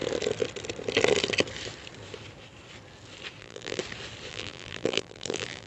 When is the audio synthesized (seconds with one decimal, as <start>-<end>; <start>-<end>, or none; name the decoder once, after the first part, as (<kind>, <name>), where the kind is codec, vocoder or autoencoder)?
3.4-3.8 (vocoder, BigVGAN v2); 4.3-5.7